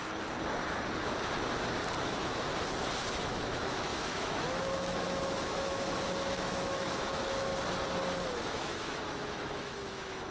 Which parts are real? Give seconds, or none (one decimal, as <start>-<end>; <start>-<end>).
0.0-2.0; 2.5-3.1; 7.5-8.5